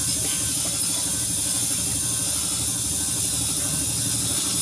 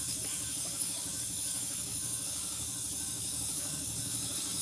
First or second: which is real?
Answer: first